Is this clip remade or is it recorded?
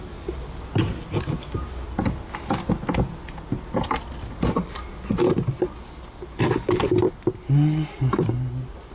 recorded